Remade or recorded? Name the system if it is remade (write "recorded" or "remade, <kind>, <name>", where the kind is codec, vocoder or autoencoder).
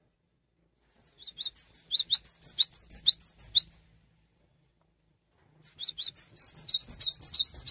recorded